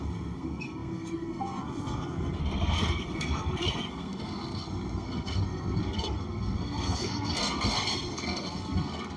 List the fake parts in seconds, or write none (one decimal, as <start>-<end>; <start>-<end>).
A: 0.0-9.2